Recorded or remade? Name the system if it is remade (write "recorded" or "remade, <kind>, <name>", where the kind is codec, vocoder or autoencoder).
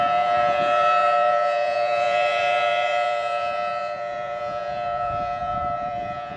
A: remade, vocoder, Vocos